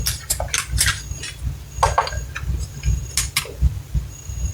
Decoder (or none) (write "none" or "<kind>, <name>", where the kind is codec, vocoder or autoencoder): none